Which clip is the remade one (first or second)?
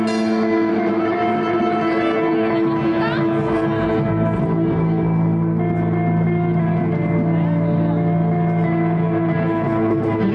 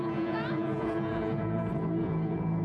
second